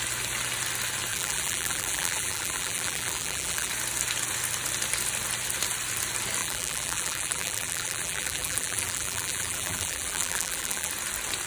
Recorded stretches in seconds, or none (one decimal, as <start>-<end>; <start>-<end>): 0.0-1.1; 3.7-6.4; 10.9-11.5